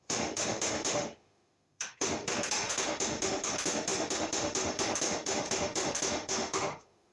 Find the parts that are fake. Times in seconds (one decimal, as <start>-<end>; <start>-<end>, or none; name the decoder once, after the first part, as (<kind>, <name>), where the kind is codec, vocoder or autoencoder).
0.0-7.1 (autoencoder, DAC-VAE)